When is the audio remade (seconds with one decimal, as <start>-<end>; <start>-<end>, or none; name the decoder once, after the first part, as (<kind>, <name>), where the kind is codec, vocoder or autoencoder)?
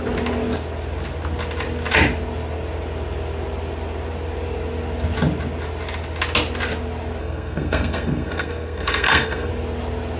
7.2-9.5 (codec, SNAC)